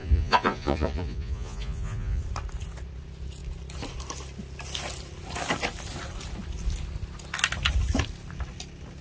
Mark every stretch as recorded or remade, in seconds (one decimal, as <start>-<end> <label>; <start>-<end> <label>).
0.0-2.2 remade; 2.2-9.0 recorded